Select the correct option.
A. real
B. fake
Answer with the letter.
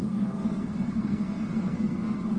B